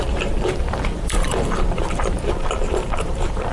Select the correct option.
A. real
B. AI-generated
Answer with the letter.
B